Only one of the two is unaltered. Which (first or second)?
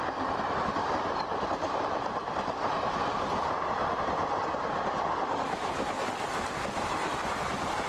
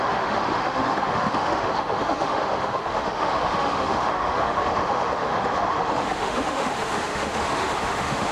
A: first